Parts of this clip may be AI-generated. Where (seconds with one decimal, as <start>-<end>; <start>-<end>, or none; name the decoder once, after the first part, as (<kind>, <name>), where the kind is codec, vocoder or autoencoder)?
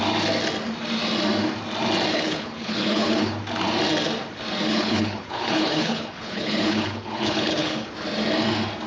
2.1-3.3 (codec, HILCodec); 4.7-7.9